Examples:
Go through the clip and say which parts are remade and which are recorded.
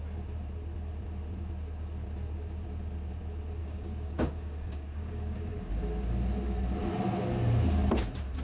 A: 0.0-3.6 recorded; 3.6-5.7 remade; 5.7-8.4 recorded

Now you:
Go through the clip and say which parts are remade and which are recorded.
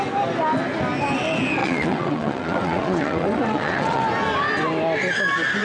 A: 0.0-1.6 recorded; 1.6-4.0 remade; 4.0-5.6 recorded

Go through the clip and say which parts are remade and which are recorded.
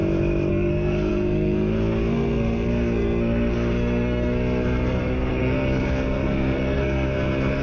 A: 0.0-0.5 recorded; 0.5-7.6 remade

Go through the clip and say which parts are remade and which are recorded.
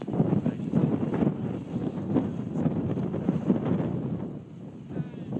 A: 0.0-5.4 recorded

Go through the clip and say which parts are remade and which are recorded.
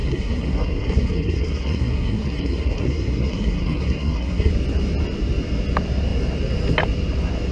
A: 0.0-4.5 remade; 4.5-7.5 recorded